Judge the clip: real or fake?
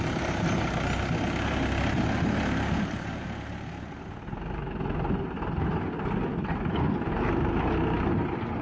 real